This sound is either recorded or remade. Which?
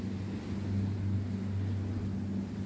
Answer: recorded